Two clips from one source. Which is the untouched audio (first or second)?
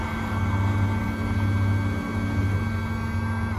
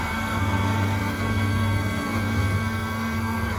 first